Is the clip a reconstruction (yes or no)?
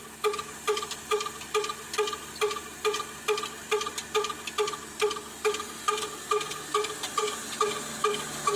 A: no